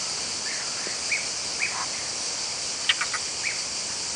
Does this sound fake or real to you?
real